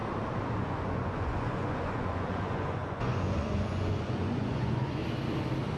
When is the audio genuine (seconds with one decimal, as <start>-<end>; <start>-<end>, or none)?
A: 0.0-0.6; 5.0-5.8